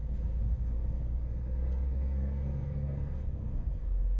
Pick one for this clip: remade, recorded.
remade